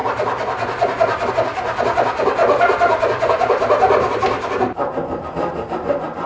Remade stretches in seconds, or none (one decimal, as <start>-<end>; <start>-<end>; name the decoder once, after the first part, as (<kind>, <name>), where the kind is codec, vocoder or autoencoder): none